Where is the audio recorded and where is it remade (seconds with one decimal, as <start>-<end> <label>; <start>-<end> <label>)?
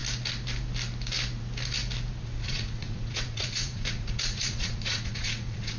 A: 0.0-2.2 recorded; 2.2-5.8 remade